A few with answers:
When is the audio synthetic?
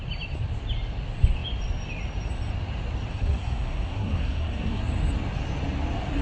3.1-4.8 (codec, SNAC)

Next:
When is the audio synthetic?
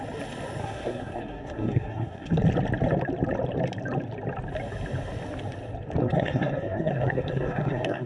0.6-2.4 (codec, SNAC); 6.0-8.1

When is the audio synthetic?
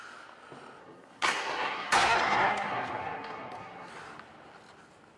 0.8-3.9 (codec, SNAC)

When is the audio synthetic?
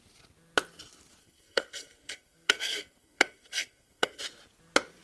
1.2-4.2 (codec, SNAC)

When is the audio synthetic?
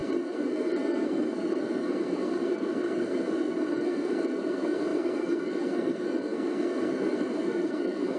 0.0-8.2 (codec, SNAC)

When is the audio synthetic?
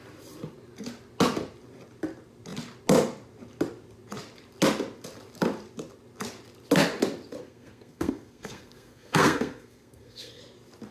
7.4-10.4 (codec, SNAC)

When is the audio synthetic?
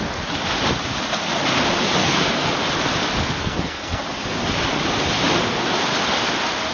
2.0-2.5 (codec, SNAC); 3.4-4.0